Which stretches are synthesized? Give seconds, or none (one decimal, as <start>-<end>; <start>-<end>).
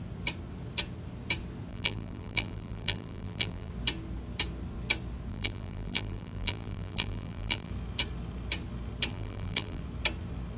1.7-3.7; 5.3-7.7; 9.1-9.8